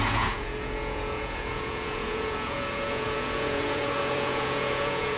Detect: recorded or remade remade